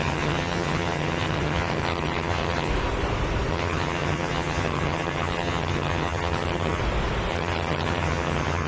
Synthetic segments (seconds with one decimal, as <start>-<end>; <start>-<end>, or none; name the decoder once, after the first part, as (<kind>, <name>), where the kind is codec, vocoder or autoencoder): 0.0-2.7 (vocoder, HiFi-GAN); 3.5-6.8; 7.3-8.7